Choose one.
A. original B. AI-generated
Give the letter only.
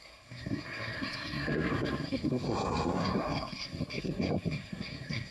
B